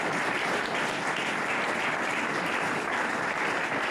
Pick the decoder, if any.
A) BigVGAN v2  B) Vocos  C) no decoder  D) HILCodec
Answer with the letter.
A